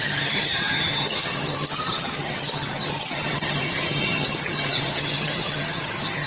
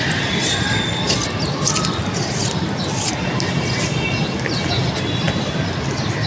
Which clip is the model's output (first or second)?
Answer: first